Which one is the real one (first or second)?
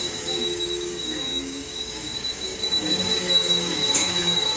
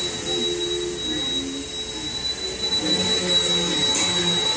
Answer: second